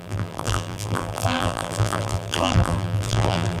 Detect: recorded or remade remade